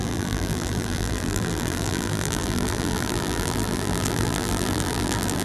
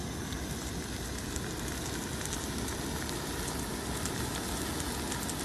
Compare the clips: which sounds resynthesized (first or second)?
first